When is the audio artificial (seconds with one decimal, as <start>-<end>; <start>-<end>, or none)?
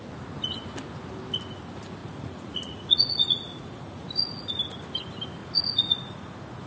2.0-4.5; 5.4-6.7